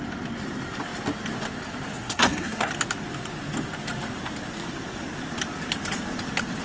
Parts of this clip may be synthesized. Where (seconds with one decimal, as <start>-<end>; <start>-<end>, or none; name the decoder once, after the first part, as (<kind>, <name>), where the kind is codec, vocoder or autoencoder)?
2.0-2.7 (codec, SNAC)